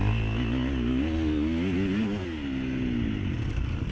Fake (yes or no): no